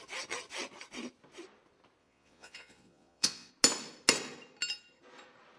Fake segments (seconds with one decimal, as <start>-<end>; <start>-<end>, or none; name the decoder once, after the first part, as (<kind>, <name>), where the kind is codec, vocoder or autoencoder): 2.0-3.5 (vocoder, Vocos)